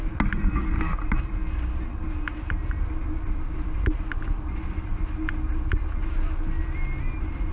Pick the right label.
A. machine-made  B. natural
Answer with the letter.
B